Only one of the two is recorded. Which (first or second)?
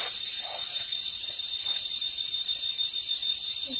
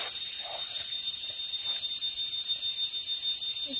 second